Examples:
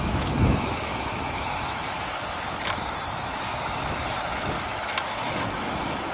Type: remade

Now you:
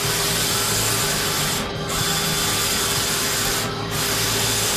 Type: recorded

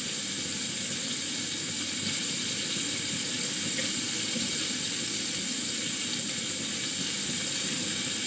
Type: recorded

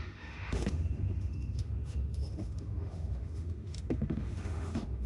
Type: remade